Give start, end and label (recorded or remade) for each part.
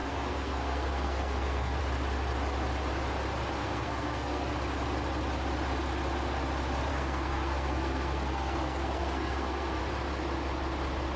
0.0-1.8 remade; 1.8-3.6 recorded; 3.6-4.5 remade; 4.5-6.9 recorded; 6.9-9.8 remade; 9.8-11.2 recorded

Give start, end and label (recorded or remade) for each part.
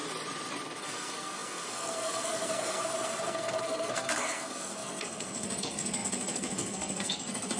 0.0-0.8 recorded; 0.8-7.6 remade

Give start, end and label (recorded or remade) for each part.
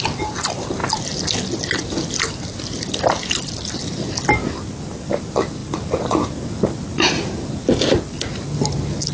0.0-9.1 recorded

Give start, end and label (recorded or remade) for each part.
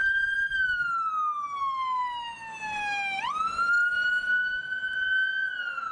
0.0-5.9 recorded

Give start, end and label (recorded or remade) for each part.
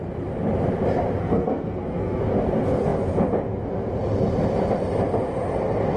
0.0-1.2 recorded; 1.2-2.2 remade; 2.2-6.0 recorded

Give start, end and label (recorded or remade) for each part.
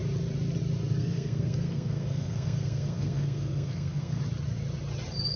0.0-1.0 recorded; 1.0-4.2 remade; 4.2-5.4 recorded